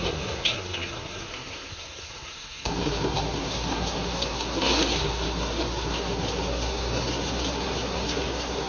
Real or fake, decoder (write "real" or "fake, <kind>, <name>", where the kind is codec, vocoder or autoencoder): fake, codec, SNAC